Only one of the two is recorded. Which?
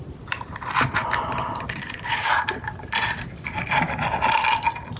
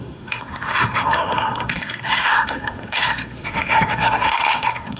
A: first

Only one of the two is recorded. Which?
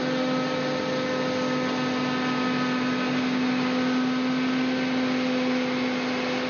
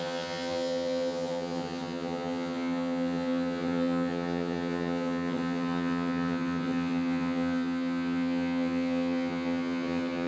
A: first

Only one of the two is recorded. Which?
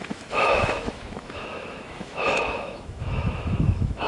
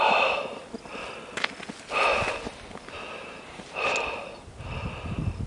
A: second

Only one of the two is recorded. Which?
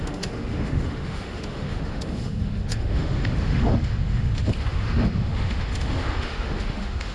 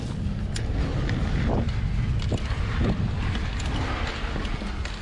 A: second